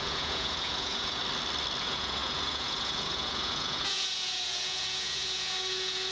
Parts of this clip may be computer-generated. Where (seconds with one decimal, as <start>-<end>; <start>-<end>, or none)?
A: 0.0-1.2; 1.8-6.1